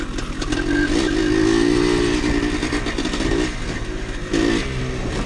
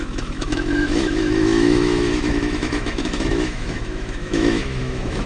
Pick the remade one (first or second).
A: second